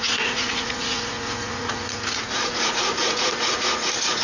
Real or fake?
fake